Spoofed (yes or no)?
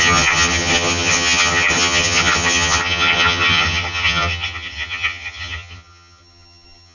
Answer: yes